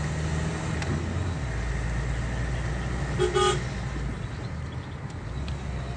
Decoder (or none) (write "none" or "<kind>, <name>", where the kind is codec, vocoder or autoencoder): none